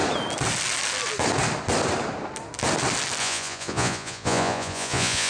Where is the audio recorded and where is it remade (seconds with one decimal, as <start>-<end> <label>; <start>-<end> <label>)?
0.0-3.2 recorded; 3.2-5.3 remade

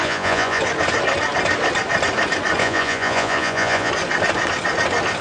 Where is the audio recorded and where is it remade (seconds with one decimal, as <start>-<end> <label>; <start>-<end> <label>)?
0.0-0.6 remade; 0.6-2.6 recorded; 2.6-3.9 remade; 3.9-5.2 recorded

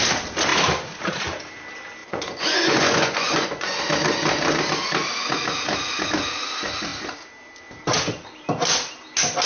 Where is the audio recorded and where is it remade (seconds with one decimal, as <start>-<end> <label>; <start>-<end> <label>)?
0.0-2.0 recorded; 2.0-3.8 remade; 3.8-9.5 recorded

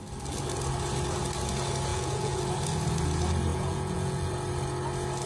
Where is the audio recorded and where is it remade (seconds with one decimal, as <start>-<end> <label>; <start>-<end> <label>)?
0.0-1.9 recorded; 1.9-2.4 remade; 2.4-3.5 recorded; 3.5-4.3 remade; 4.3-5.3 recorded

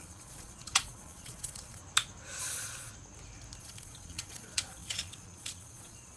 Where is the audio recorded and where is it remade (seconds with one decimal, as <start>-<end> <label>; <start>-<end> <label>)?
0.0-1.8 remade; 1.8-2.4 recorded; 2.4-2.9 remade; 2.9-3.6 recorded; 3.6-6.2 remade

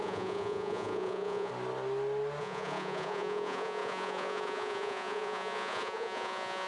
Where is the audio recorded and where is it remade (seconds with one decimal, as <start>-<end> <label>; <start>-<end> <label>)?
0.0-1.5 remade; 1.5-2.4 recorded; 2.4-6.7 remade

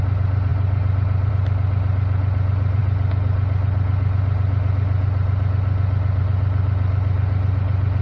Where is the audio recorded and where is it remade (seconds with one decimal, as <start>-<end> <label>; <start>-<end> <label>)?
0.0-8.0 recorded